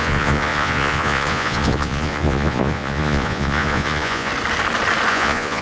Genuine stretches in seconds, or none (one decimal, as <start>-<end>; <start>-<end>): 4.3-5.1